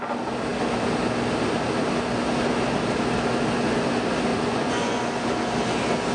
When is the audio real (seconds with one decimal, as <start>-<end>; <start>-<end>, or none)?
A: 0.0-4.3; 5.0-6.1